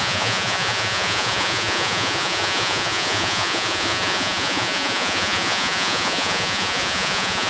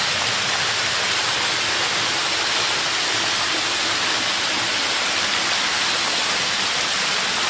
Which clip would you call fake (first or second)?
first